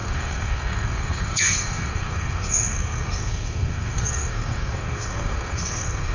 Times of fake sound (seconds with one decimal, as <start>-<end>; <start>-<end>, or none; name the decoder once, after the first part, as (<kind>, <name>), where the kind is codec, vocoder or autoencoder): 0.0-6.1 (codec, SNAC)